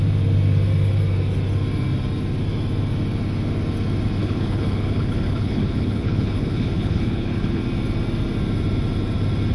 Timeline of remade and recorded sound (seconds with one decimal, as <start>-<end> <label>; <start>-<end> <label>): 0.0-4.2 recorded; 4.2-7.6 remade; 7.6-9.5 recorded